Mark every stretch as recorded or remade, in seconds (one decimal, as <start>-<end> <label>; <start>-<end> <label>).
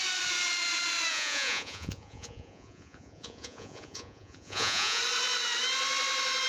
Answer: 0.0-1.1 recorded; 1.1-5.0 remade; 5.0-6.5 recorded